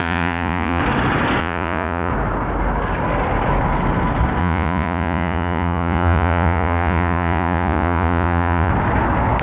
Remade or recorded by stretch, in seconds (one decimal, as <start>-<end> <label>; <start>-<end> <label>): 0.0-0.8 remade; 0.8-1.4 recorded; 1.4-2.1 remade; 2.1-4.4 recorded; 4.4-8.7 remade; 8.7-9.4 recorded